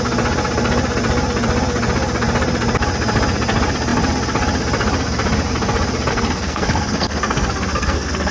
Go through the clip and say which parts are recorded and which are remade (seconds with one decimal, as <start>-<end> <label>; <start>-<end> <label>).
0.0-6.1 recorded; 6.1-8.3 remade